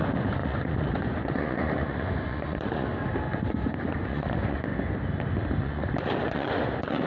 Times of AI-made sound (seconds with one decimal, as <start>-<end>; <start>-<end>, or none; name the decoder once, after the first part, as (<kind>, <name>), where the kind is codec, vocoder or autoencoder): 0.0-2.9 (vocoder, Vocos); 3.7-4.7; 5.6-7.1

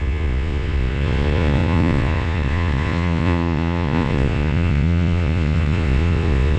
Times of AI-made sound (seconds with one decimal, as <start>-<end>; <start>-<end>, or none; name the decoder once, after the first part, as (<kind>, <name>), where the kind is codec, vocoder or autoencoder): 0.0-6.6 (vocoder, Vocos)

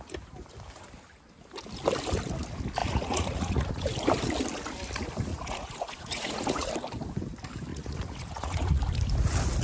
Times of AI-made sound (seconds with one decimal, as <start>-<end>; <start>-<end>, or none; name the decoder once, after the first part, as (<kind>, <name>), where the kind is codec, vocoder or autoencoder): 2.8-3.9 (vocoder, Vocos); 5.3-6.7; 7.7-8.8

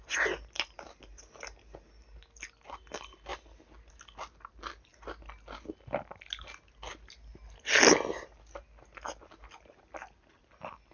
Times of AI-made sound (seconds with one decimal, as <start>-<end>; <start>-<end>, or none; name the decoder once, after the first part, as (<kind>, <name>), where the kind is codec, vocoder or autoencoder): none

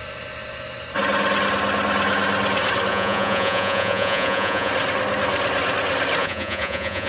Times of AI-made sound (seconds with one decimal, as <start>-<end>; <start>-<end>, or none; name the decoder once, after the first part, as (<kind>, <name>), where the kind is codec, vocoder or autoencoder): 2.9-4.7 (vocoder, Vocos); 6.2-7.1

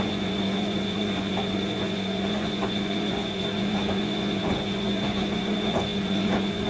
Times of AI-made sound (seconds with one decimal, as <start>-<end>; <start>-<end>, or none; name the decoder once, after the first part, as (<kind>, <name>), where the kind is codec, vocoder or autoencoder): 0.0-6.7 (vocoder, Vocos)

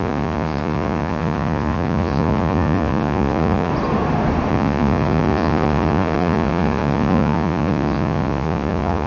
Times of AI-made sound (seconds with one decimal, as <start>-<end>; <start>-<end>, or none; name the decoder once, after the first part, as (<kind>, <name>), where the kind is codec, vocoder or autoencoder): 0.0-3.7 (vocoder, Vocos); 4.5-9.1

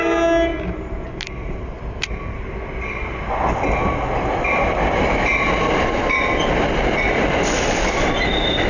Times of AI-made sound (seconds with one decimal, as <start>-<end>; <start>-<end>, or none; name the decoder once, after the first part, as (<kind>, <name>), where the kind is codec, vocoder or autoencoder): none